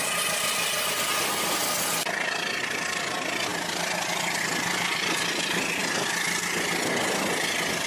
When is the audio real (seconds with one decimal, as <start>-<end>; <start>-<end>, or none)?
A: 0.0-7.9